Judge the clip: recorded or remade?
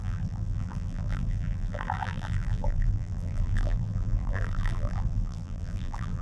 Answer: remade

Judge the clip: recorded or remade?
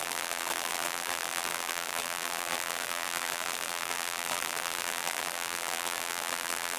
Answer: remade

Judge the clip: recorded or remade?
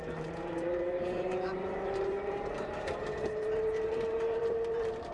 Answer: remade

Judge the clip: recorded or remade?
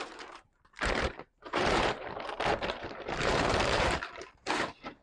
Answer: remade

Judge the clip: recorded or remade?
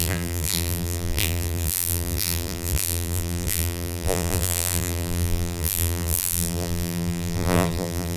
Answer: remade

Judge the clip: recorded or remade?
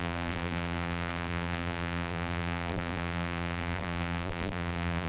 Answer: remade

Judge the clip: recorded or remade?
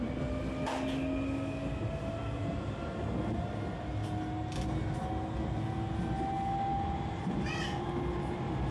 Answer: recorded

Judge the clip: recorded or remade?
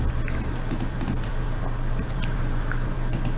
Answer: remade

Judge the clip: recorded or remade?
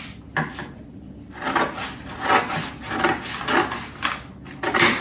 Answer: recorded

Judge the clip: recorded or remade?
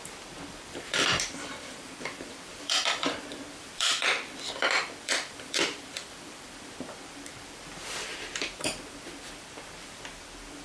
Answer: remade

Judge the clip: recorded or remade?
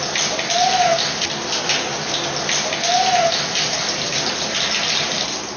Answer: recorded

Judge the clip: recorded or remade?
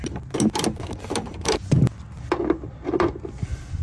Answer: recorded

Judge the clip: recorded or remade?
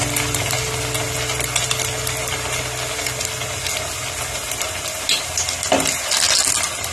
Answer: recorded